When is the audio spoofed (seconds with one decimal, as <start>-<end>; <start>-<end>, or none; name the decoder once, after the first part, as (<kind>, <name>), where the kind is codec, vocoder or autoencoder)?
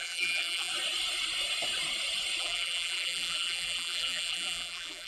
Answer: 0.0-0.7 (vocoder, BigVGAN v2); 2.4-5.1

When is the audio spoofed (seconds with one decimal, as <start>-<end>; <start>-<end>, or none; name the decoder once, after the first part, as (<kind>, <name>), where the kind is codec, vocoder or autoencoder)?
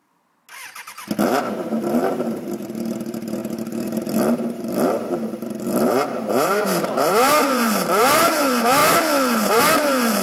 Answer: 1.5-10.2 (vocoder, BigVGAN v2)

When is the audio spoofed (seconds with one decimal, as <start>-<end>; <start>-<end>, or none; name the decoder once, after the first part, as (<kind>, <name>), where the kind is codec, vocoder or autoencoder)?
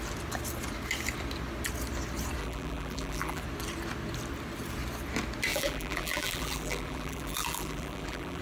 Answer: 2.4-3.4 (vocoder, BigVGAN v2); 5.5-8.4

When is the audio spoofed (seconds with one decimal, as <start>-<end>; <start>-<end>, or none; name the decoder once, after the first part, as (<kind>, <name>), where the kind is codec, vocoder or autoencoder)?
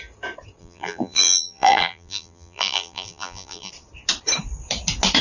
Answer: 0.6-3.7 (vocoder, BigVGAN v2)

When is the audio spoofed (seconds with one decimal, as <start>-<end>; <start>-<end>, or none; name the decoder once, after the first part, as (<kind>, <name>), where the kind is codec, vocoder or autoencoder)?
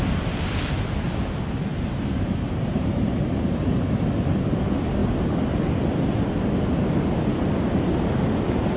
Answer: 1.7-3.7 (vocoder, BigVGAN v2)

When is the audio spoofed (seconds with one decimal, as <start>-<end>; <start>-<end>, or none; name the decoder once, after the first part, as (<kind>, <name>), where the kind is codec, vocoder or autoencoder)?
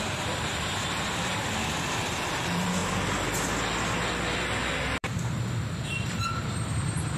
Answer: 0.0-2.8 (vocoder, BigVGAN v2); 5.0-7.2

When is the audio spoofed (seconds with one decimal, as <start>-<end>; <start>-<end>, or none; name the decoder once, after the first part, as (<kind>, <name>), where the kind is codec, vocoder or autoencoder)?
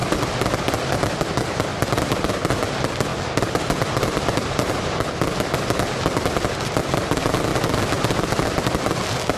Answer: none